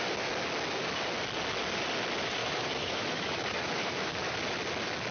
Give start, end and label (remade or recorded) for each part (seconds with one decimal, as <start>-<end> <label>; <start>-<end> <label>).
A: 0.0-2.4 recorded; 2.4-4.3 remade; 4.3-5.1 recorded